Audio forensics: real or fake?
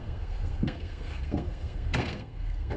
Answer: fake